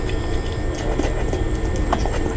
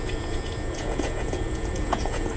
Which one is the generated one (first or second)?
second